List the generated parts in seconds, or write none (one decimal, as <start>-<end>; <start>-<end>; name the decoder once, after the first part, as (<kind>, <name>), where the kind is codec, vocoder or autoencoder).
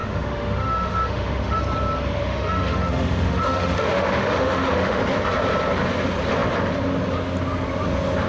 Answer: 0.0-1.6 (autoencoder, DAC-VAE); 2.2-5.0